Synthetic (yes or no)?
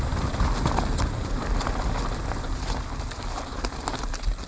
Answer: no